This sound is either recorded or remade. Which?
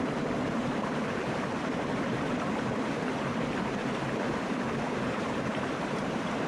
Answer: remade